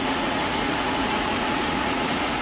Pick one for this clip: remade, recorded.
remade